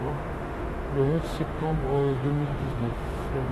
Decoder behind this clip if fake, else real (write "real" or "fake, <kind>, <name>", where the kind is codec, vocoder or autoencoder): fake, autoencoder, DAC-VAE